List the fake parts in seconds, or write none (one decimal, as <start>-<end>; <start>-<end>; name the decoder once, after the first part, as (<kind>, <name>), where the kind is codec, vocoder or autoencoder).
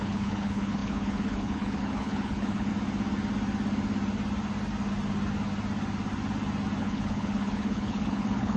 0.0-2.7 (codec, HILCodec); 6.8-8.6